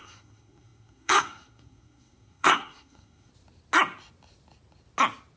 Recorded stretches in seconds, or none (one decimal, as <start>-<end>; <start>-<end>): 3.3-5.4